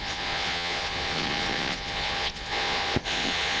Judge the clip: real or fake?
fake